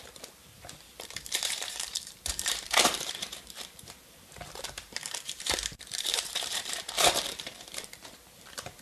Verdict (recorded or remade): remade